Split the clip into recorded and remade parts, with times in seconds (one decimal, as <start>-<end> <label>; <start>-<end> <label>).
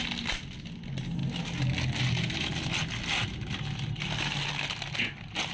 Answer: 0.0-5.5 recorded